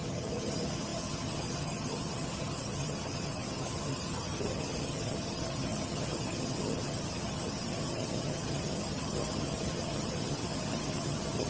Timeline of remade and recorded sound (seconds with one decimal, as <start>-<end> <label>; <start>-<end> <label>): 0.0-11.5 remade